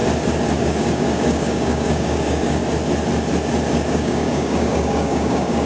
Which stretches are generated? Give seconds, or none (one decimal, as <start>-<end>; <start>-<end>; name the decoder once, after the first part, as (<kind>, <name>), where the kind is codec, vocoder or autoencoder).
0.6-2.6 (codec, DAC); 3.9-5.7